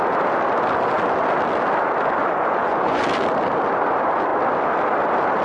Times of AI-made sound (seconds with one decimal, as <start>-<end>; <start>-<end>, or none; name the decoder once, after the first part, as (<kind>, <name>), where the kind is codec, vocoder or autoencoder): 2.2-3.0 (vocoder, Vocos)